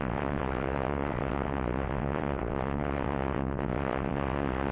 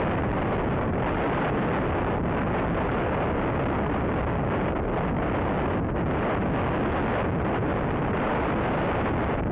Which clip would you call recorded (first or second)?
second